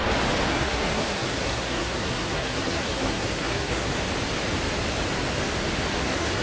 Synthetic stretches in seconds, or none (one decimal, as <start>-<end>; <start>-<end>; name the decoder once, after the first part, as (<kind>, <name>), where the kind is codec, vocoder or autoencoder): 0.5-3.9 (codec, SNAC); 5.9-6.4